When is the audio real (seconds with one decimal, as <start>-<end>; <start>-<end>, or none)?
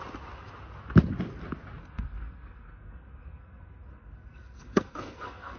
0.0-1.8